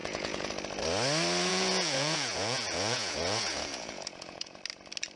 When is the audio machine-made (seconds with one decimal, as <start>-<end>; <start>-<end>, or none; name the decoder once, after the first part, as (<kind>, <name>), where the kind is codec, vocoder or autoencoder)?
0.0-0.5 (vocoder, Vocos); 1.5-4.6